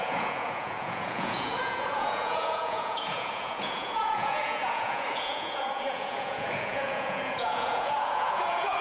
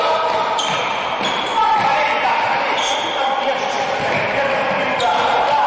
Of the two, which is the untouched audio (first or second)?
second